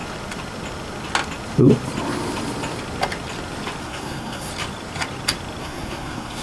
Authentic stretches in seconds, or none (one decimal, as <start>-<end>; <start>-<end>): 0.0-3.8; 4.5-5.6